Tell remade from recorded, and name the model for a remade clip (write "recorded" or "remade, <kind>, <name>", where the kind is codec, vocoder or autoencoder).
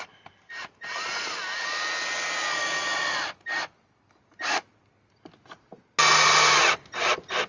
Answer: recorded